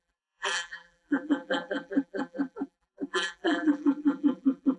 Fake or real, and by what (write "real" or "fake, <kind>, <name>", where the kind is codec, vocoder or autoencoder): fake, vocoder, BigVGAN v2